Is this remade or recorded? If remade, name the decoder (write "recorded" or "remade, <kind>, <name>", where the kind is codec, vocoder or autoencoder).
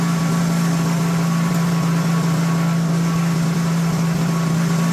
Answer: recorded